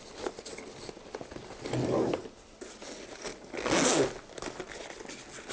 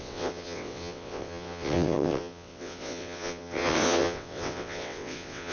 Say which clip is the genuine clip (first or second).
first